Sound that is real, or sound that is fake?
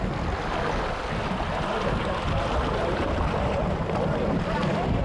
real